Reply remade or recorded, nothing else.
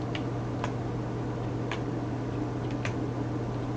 recorded